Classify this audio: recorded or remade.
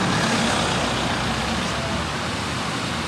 recorded